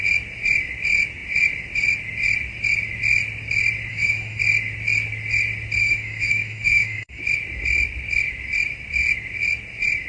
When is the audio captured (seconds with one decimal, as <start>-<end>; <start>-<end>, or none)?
0.0-3.9; 4.4-5.8; 7.2-10.1